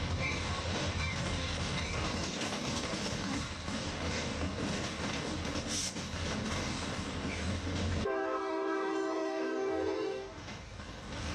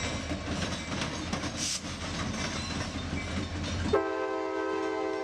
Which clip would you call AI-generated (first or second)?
first